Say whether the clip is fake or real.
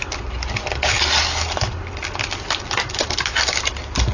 real